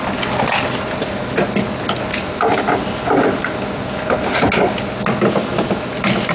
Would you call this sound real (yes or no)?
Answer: yes